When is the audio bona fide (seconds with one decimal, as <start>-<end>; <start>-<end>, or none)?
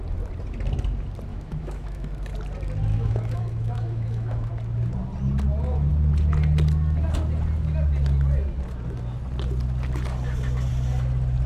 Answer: 0.0-1.3; 2.1-2.9; 4.5-11.5